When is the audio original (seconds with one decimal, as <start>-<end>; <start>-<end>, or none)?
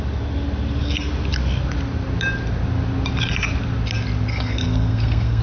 0.0-4.3